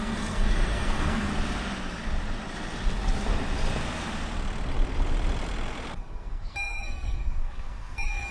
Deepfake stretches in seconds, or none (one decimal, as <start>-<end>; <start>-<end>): 0.0-1.3; 5.9-8.3